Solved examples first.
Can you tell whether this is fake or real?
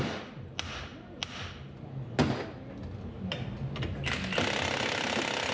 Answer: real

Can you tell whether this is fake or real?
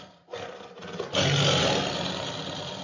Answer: real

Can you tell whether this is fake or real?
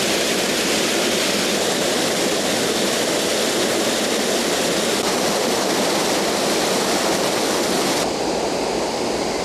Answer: real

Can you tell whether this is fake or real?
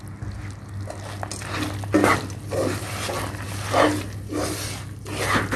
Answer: real